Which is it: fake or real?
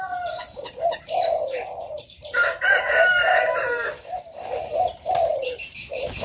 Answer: fake